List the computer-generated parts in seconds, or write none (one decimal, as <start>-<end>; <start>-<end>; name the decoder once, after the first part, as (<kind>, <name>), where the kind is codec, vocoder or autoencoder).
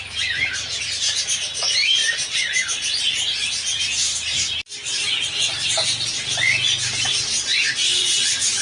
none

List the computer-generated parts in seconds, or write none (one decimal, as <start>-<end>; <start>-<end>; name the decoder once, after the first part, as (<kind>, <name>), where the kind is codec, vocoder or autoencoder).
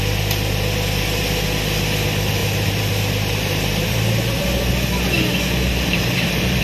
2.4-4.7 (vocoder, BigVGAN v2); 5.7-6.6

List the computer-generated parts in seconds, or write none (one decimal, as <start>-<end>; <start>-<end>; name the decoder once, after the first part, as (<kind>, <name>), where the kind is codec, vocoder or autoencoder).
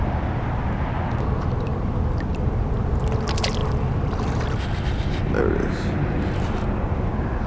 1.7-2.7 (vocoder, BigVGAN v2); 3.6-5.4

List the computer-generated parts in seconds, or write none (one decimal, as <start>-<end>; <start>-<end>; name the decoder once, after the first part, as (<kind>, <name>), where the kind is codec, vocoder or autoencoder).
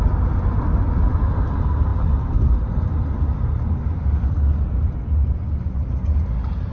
none